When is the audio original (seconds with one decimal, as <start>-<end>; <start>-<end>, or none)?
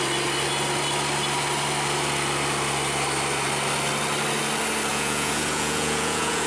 0.0-4.9